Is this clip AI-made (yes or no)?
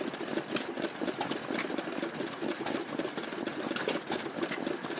no